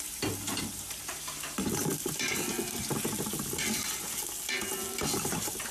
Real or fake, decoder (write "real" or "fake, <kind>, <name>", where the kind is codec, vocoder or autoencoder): real